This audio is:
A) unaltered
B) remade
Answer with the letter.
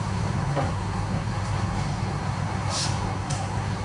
B